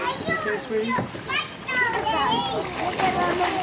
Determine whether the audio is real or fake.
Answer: real